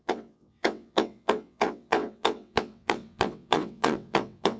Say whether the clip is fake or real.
fake